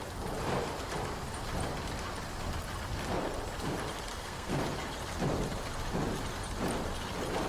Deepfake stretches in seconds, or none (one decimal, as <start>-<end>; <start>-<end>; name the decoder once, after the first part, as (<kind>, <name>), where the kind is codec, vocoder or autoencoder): 4.1-4.6 (codec, SNAC)